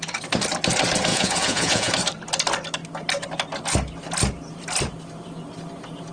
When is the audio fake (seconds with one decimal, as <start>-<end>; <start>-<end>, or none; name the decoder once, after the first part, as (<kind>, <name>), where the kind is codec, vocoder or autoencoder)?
1.1-1.9 (vocoder, Vocos)